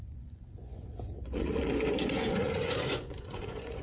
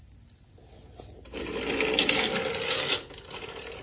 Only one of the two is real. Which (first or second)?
second